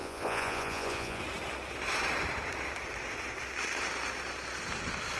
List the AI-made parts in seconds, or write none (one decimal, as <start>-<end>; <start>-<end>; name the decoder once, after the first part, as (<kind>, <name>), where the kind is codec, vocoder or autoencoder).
0.0-1.2 (vocoder, Vocos)